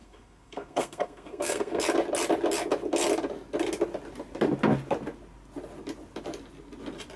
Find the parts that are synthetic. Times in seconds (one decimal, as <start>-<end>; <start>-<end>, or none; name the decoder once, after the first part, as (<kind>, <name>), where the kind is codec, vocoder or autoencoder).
0.0-1.8 (codec, SNAC)